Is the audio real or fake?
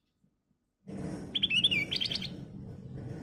real